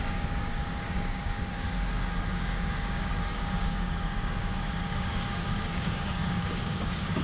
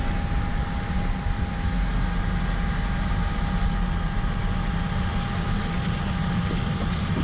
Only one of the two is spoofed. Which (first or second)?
first